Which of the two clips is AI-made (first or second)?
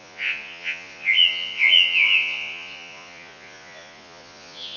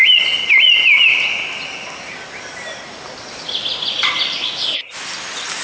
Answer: first